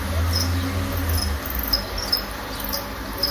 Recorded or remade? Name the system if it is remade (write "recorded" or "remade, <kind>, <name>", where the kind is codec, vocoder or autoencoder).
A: recorded